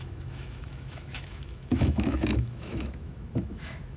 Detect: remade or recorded remade